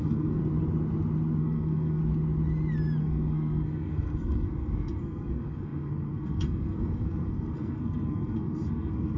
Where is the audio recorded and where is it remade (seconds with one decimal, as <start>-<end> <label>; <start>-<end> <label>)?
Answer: 0.0-0.4 remade; 0.4-1.4 recorded; 1.4-2.0 remade; 2.0-3.0 recorded; 3.0-9.2 remade